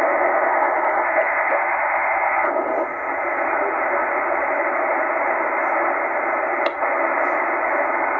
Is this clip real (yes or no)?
yes